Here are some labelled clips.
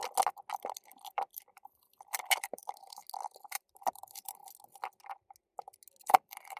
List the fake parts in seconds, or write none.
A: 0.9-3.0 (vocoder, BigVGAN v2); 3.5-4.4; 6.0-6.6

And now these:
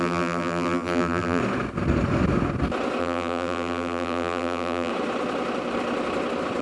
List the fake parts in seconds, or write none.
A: 0.0-1.4 (vocoder, BigVGAN v2); 3.0-4.9

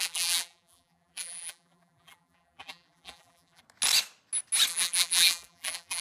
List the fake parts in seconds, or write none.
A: 0.0-3.6 (vocoder, BigVGAN v2); 4.7-6.0

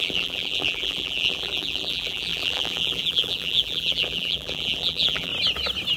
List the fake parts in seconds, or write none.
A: 0.0-5.3 (vocoder, BigVGAN v2)

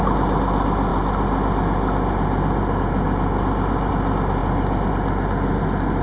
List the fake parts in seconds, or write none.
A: none

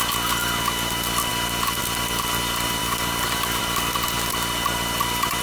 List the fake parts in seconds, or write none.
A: 2.8-3.6 (vocoder, BigVGAN v2)